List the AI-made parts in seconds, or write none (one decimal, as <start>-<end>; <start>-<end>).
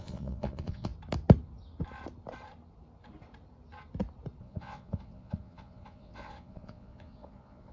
0.0-0.9; 4.4-7.7